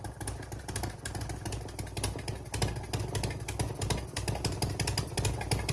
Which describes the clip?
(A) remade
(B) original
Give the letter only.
B